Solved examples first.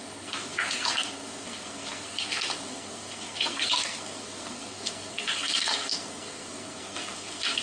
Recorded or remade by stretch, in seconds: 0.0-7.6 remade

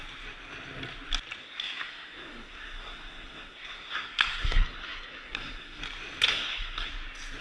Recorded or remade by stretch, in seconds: 0.0-1.4 recorded; 1.4-5.8 remade; 5.8-6.3 recorded; 6.3-6.9 remade; 6.9-7.4 recorded